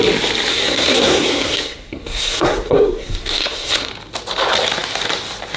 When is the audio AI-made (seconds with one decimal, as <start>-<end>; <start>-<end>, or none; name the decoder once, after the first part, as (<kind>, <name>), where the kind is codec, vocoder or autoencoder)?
0.5-3.9 (codec, SNAC)